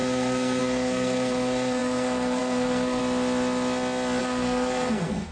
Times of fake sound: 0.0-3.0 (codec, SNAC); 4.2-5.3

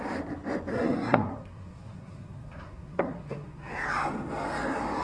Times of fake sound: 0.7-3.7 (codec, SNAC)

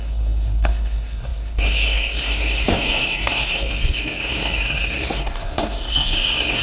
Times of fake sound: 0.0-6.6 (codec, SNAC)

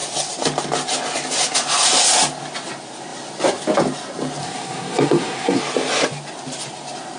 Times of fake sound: 4.4-5.6 (codec, SNAC)

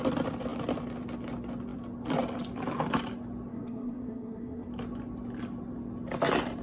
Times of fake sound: 3.5-4.7 (codec, SNAC)

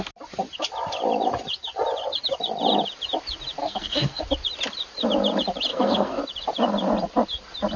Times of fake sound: 3.6-4.2 (codec, SNAC); 5.7-6.2

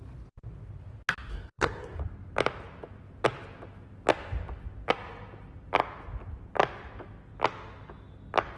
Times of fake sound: 1.3-2.0 (codec, SNAC)